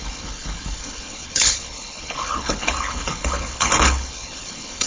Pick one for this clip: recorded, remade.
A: remade